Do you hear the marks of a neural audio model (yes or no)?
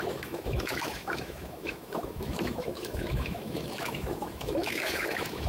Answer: yes